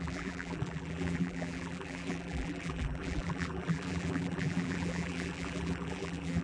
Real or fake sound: fake